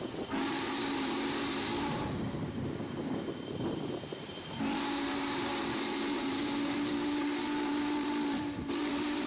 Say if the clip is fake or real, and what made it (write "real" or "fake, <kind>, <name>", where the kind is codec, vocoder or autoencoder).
fake, vocoder, BigVGAN v2